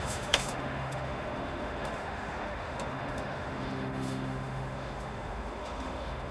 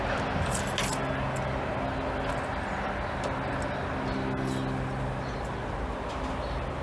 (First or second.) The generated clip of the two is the first